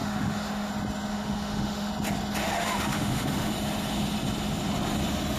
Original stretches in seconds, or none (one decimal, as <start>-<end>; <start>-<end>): 0.7-1.1; 1.9-2.4; 3.5-5.4